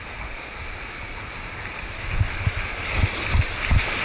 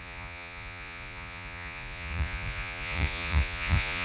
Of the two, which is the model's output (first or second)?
second